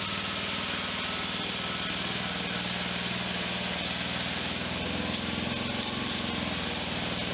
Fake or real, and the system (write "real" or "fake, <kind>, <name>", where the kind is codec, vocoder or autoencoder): real